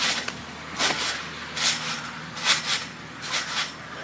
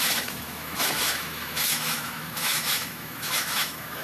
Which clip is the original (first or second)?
first